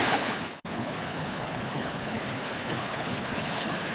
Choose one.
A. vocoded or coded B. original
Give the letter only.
A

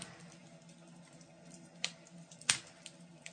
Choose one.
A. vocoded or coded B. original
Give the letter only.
B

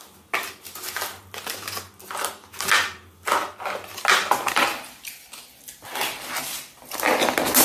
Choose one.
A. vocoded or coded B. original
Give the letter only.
B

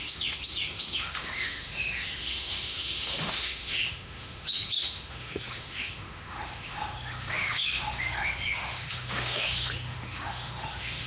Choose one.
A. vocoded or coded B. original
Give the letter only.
A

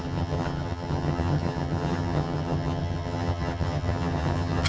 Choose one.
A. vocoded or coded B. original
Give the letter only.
A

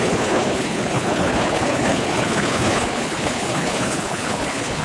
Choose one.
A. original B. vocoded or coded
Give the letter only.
B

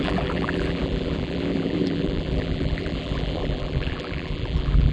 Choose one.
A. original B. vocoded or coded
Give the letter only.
B